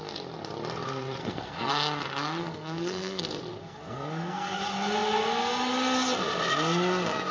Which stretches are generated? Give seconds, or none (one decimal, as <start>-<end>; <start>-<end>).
1.2-1.7; 2.4-3.2; 3.6-4.6